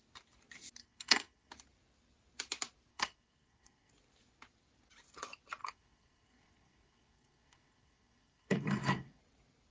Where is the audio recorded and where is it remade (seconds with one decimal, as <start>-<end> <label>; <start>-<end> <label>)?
0.0-0.8 recorded; 0.8-1.5 remade; 1.5-2.9 recorded; 2.9-3.9 remade; 3.9-5.6 recorded; 5.6-9.2 remade; 9.2-9.7 recorded